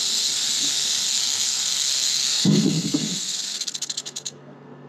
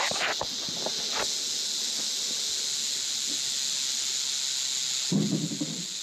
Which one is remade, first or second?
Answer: first